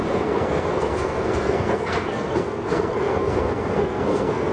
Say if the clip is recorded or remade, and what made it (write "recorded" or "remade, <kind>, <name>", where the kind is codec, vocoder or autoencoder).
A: remade, codec, SNAC